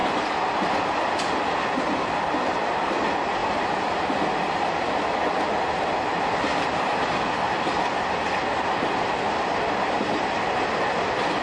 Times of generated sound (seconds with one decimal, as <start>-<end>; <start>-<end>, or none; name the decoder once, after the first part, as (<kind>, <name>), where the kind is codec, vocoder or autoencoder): none